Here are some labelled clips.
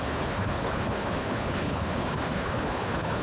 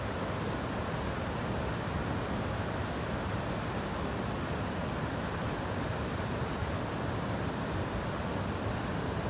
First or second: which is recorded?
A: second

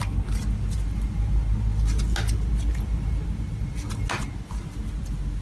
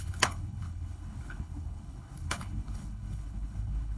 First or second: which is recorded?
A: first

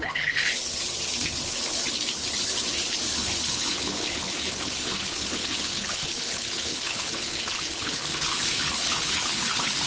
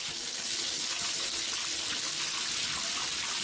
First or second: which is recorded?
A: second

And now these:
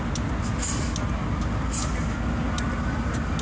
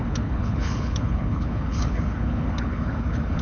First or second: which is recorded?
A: first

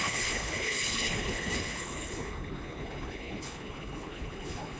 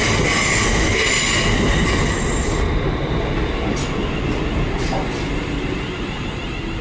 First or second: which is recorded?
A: second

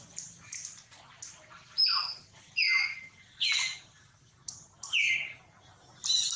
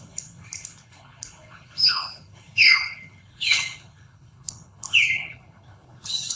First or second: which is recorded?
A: first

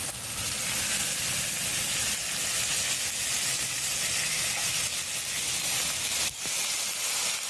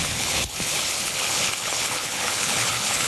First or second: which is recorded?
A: first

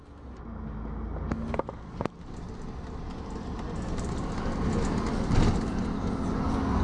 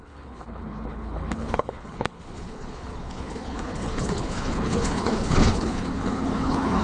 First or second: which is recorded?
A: first